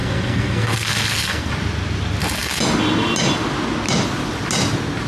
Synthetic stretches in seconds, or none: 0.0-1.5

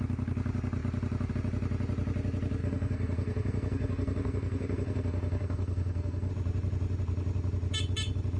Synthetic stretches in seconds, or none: 2.6-6.3